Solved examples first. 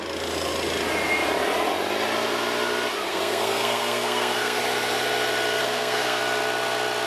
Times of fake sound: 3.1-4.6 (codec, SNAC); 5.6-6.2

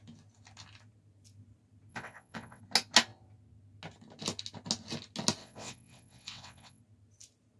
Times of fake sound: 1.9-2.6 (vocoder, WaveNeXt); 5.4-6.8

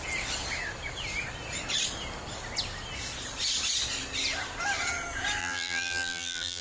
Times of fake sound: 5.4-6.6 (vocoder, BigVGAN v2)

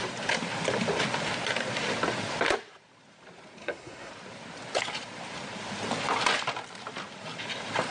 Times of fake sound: 3.6-4.1 (codec, SNAC)